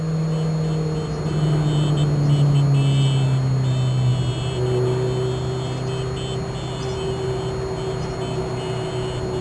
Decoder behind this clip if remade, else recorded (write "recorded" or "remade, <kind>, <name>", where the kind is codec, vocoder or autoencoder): recorded